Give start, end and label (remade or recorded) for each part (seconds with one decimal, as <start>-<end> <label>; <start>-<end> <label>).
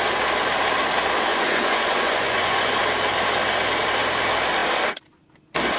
0.0-1.3 recorded; 1.3-2.8 remade; 2.8-5.8 recorded